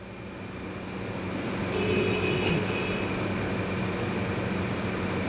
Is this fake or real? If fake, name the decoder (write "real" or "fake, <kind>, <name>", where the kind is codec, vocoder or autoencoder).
real